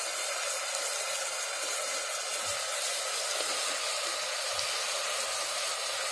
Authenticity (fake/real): real